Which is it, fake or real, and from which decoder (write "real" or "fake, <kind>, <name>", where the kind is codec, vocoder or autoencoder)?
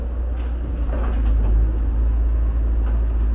real